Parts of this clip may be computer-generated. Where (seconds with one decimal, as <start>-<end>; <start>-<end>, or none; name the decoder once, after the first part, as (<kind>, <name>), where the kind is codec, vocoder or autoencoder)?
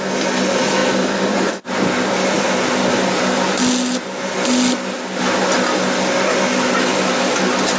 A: none